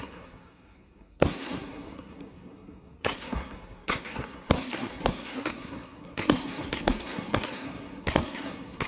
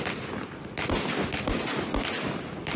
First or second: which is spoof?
first